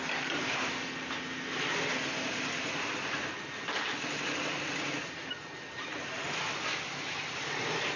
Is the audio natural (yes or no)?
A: yes